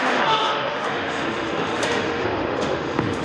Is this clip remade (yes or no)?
yes